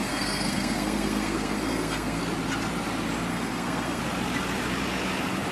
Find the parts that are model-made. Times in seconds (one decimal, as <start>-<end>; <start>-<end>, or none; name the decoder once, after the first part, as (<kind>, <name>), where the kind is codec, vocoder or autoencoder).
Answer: 0.0-2.2 (codec, SNAC); 3.3-4.0